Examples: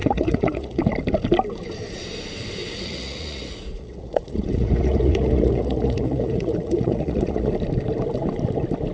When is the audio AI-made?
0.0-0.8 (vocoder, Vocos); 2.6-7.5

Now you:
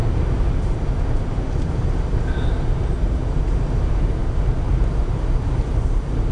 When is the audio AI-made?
3.8-6.3 (vocoder, BigVGAN v2)